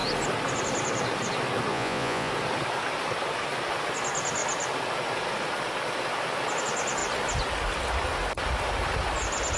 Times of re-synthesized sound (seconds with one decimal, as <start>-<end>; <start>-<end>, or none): 1.7-2.3